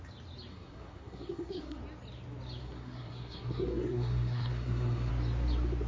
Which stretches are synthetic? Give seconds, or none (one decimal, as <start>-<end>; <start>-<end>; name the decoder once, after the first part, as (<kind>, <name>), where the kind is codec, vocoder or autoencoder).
0.5-1.8 (codec, SNAC); 2.6-5.1